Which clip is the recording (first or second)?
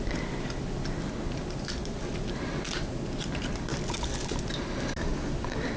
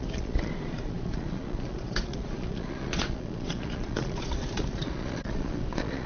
first